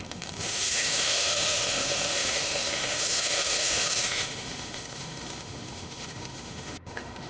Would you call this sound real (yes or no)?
no